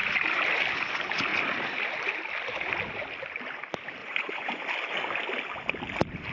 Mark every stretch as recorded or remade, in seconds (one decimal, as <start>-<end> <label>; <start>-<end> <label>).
0.0-4.0 recorded; 4.0-4.6 remade; 4.6-6.3 recorded